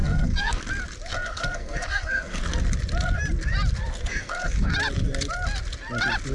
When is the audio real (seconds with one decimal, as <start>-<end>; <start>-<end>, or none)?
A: 0.6-1.1; 2.4-4.1; 4.7-6.3